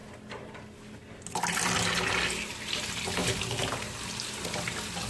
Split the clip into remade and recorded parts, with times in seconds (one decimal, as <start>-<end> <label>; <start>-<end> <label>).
0.0-1.1 remade; 1.1-3.2 recorded; 3.2-5.1 remade